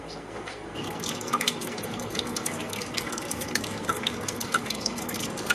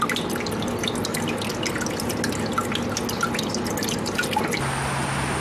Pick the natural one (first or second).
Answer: second